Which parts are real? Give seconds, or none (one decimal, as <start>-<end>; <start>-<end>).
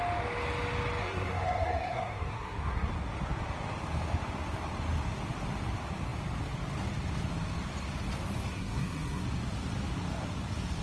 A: 0.0-1.0; 2.9-8.5; 9.2-10.8